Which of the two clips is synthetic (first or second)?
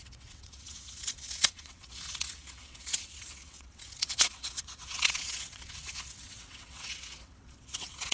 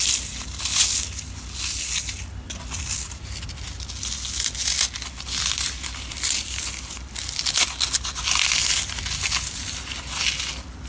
first